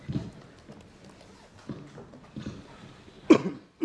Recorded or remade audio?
recorded